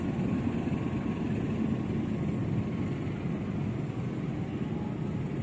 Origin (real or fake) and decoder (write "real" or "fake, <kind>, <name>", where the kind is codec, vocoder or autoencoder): real